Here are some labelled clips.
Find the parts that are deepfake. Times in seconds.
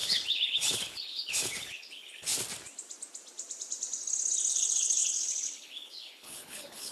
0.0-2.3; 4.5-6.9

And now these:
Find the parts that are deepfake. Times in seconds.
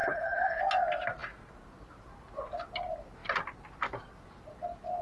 0.0-0.6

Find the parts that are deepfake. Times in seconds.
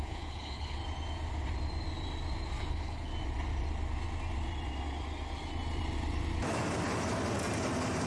0.0-0.8; 2.7-3.1